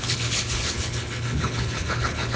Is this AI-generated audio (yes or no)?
yes